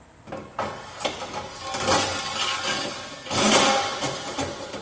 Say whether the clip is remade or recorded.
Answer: recorded